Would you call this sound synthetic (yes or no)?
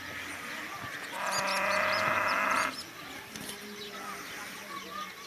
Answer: no